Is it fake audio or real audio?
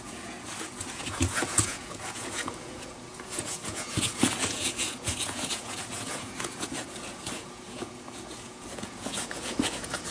fake